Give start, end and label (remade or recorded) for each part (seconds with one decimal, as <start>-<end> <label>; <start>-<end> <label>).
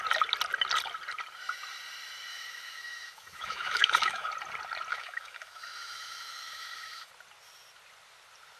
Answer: 0.0-2.3 recorded; 2.3-4.3 remade; 4.3-4.9 recorded; 4.9-7.1 remade; 7.1-8.6 recorded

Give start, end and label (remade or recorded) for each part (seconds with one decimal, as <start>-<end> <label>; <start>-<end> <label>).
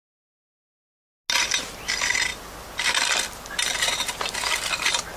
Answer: 0.0-5.2 recorded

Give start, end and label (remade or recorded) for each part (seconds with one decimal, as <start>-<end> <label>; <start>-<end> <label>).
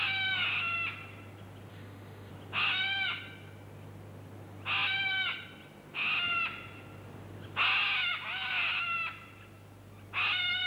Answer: 0.0-1.7 recorded; 1.7-2.3 remade; 2.3-10.7 recorded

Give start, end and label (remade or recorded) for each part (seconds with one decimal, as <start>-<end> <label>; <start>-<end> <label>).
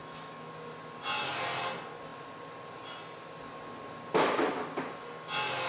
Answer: 0.0-0.5 remade; 0.5-5.7 recorded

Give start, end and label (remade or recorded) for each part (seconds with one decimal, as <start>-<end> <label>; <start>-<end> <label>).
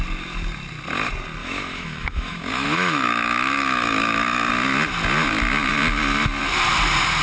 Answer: 0.0-1.4 recorded; 1.4-4.5 remade; 4.5-7.2 recorded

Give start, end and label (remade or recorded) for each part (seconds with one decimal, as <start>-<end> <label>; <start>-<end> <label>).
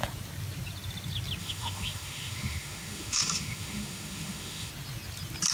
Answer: 0.0-1.4 recorded; 1.4-4.7 remade; 4.7-5.5 recorded